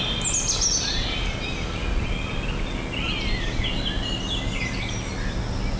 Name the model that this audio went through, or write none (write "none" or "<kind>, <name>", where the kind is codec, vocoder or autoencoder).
none